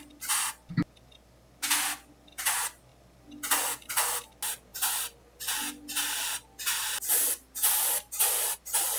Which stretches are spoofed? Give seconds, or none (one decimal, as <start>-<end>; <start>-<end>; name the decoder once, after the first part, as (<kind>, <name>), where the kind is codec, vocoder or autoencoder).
none